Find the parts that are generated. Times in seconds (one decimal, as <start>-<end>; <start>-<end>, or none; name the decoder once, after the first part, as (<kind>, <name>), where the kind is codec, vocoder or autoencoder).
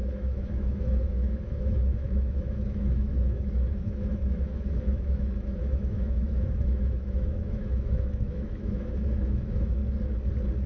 0.0-9.8 (autoencoder, DAC-VAE)